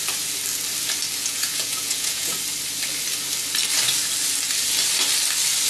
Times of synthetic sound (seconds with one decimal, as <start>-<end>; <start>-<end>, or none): 1.2-2.4